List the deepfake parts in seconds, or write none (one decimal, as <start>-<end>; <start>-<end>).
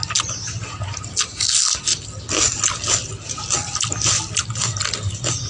none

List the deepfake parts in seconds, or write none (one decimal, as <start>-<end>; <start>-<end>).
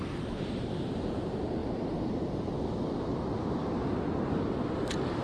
none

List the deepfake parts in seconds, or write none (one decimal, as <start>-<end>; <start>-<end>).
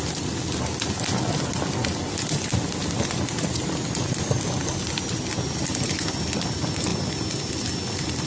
none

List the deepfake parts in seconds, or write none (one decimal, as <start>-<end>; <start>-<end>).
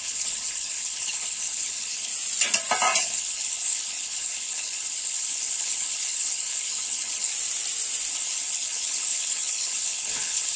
0.0-2.1; 3.0-7.3; 8.1-10.6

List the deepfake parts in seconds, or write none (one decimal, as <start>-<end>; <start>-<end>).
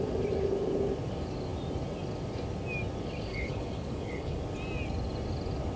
3.3-4.4